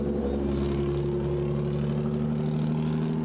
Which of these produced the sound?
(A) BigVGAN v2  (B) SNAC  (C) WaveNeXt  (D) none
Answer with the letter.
D